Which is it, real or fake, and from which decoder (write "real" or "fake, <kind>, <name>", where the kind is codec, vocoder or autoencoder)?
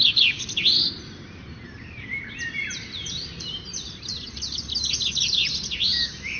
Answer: fake, vocoder, BigVGAN v2